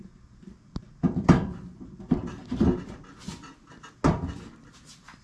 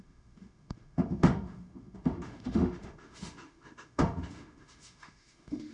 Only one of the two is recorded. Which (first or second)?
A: first